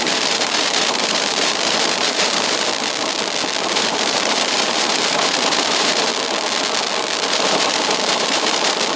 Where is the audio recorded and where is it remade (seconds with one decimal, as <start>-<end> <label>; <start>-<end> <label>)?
0.0-2.7 remade; 2.7-3.7 recorded; 3.7-6.1 remade; 6.1-7.3 recorded; 7.3-9.0 remade